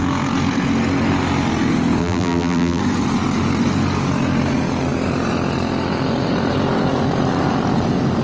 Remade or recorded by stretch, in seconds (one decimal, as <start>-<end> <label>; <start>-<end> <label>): 0.0-2.0 recorded; 2.0-2.8 remade; 2.8-8.2 recorded

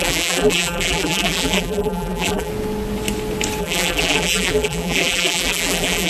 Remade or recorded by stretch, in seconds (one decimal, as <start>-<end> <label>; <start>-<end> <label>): 0.0-2.5 remade; 2.5-3.6 recorded; 3.6-6.1 remade

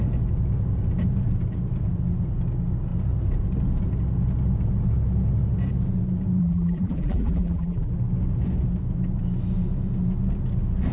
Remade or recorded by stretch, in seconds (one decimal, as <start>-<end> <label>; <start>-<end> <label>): 0.0-6.4 recorded; 6.4-7.9 remade; 7.9-10.9 recorded

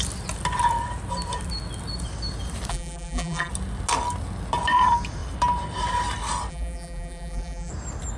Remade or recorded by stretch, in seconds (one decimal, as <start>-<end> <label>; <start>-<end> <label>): 0.0-2.7 recorded; 2.7-3.5 remade; 3.5-6.5 recorded; 6.5-7.7 remade; 7.7-8.2 recorded

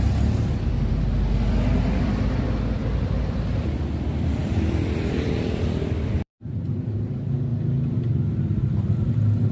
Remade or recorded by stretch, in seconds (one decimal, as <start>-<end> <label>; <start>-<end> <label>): 0.0-4.4 recorded; 4.4-6.9 remade; 6.9-9.5 recorded

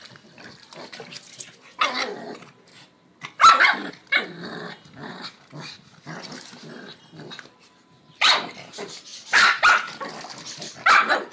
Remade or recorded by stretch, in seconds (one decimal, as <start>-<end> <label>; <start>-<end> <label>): 0.0-2.7 remade; 2.7-3.9 recorded; 3.9-11.3 remade

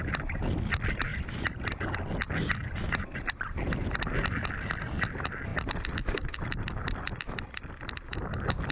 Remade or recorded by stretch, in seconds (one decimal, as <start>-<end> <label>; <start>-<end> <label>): 0.0-1.1 recorded; 1.1-4.1 remade; 4.1-5.5 recorded; 5.5-7.9 remade; 7.9-8.7 recorded

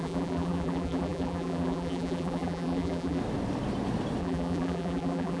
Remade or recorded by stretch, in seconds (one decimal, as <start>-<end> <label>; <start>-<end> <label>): 0.0-3.2 remade; 3.2-4.2 recorded; 4.2-5.4 remade